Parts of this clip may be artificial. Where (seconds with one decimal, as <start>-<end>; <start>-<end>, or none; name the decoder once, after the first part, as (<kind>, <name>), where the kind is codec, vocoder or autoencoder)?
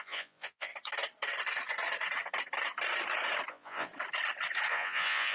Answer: 0.0-0.7 (vocoder, Vocos); 3.5-3.9; 4.7-5.3